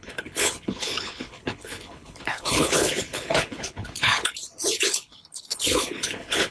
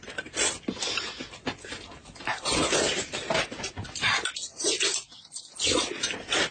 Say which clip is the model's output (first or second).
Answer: first